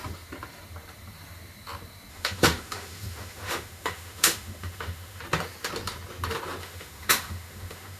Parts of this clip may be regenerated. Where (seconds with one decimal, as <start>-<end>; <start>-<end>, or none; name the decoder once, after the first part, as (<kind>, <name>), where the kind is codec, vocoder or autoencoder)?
2.1-5.2 (autoencoder, DAC-VAE); 6.6-8.0